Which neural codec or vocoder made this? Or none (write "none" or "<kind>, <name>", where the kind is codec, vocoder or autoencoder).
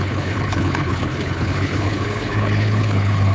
codec, HILCodec